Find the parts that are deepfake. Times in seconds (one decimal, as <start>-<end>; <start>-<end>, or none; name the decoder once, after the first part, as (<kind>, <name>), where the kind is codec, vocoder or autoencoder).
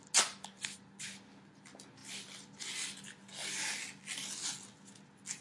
none